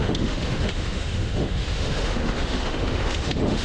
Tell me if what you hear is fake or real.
fake